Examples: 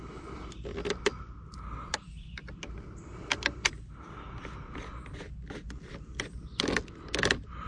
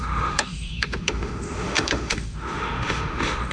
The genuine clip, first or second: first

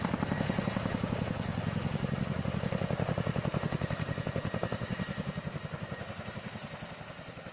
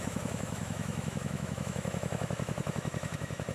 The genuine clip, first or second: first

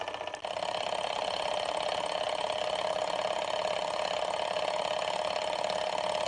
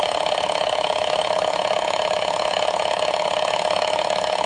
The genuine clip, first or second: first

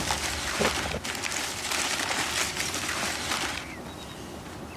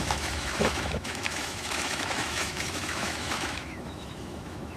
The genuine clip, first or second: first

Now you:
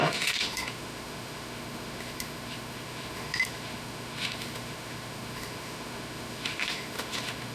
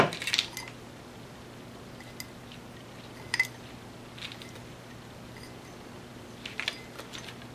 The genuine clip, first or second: second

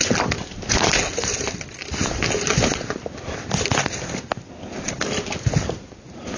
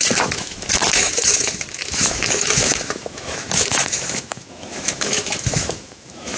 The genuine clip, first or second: first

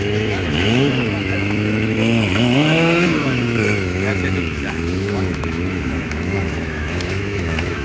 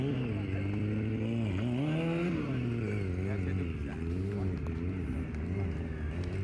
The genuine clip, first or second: second